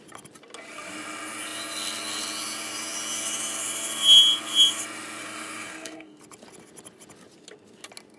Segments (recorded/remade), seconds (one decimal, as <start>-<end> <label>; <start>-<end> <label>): 0.0-5.2 recorded; 5.2-6.2 remade; 6.2-8.2 recorded